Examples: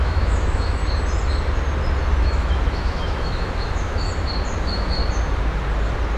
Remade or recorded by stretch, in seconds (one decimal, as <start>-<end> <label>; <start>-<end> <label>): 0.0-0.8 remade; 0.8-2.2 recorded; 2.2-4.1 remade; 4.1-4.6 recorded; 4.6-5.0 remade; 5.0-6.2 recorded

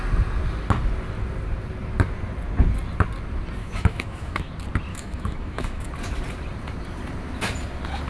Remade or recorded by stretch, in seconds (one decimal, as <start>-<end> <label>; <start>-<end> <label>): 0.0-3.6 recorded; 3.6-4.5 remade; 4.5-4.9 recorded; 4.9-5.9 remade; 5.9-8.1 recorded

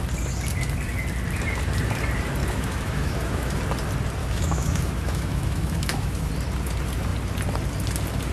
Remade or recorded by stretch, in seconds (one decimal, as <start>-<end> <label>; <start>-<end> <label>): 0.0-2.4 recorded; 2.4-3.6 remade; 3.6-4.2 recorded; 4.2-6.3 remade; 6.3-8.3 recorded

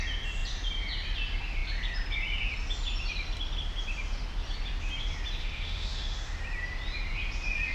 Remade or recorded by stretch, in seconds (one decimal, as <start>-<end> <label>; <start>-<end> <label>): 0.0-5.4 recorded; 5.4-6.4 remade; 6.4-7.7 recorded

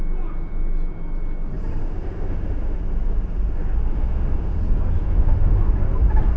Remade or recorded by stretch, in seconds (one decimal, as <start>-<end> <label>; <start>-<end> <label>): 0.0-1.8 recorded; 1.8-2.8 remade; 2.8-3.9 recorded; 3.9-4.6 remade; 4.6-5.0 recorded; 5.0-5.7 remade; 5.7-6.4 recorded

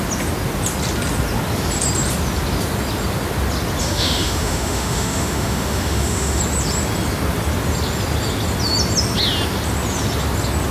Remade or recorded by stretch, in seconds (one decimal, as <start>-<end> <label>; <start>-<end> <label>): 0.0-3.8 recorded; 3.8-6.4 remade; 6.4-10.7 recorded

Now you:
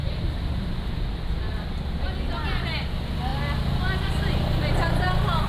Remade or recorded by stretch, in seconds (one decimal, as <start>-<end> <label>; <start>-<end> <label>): 0.0-5.5 recorded

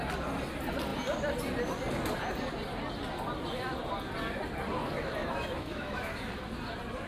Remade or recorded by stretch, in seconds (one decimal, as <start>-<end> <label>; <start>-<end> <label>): 0.0-4.8 recorded; 4.8-6.3 remade; 6.3-7.1 recorded